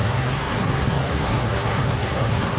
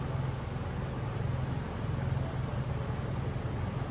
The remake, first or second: first